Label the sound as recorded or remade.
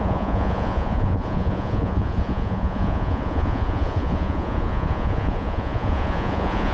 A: remade